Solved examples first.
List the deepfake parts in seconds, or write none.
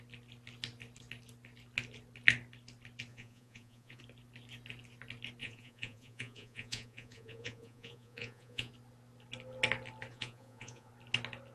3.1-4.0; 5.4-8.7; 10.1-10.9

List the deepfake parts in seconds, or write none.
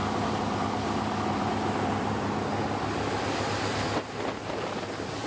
none